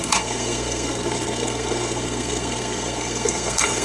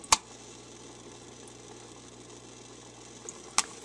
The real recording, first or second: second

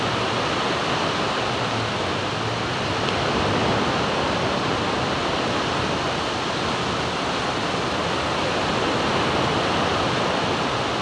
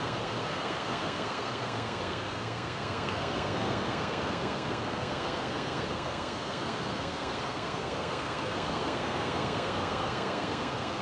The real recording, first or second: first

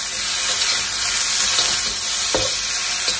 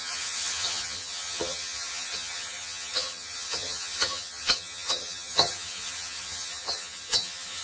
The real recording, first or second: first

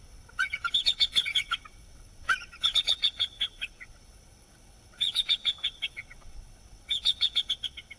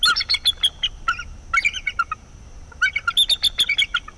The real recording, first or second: second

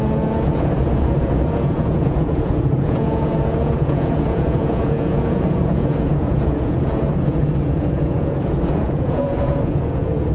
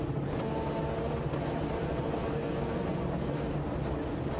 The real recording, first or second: second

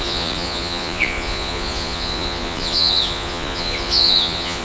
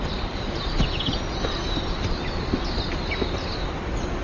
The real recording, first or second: second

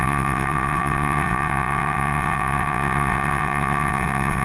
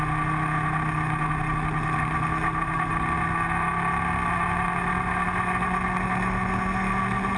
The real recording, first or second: second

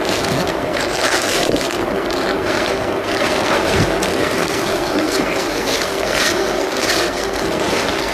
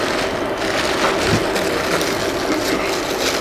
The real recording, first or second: second